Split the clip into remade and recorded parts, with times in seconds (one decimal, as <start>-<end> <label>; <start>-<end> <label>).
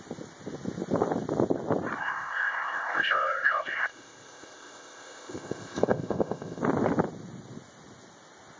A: 0.0-2.0 recorded; 2.0-6.6 remade; 6.6-8.6 recorded